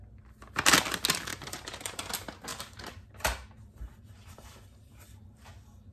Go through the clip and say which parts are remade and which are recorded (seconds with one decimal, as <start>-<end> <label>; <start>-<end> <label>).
0.0-1.3 recorded; 1.3-2.0 remade; 2.0-2.5 recorded; 2.5-5.2 remade; 5.2-5.9 recorded